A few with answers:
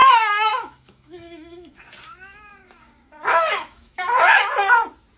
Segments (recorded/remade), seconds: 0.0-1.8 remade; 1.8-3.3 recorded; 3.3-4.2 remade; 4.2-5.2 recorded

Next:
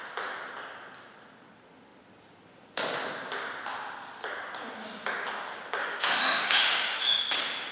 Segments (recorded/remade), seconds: 0.0-5.8 recorded; 5.8-7.2 remade; 7.2-7.7 recorded

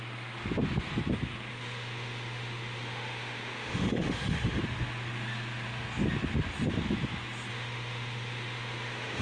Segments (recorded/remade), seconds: 0.0-1.5 recorded; 1.5-4.6 remade; 4.6-7.5 recorded; 7.5-9.2 remade